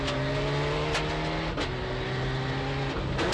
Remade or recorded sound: recorded